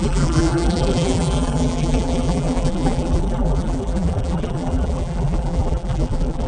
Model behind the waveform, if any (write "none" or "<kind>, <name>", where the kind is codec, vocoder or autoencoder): vocoder, BigVGAN v2